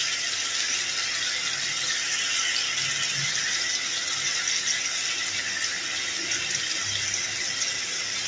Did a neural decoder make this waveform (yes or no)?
no